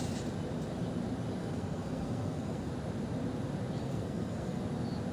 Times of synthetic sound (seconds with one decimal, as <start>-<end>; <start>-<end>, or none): 1.4-2.7; 3.8-4.6